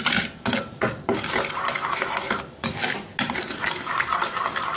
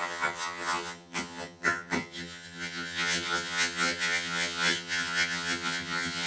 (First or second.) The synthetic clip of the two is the second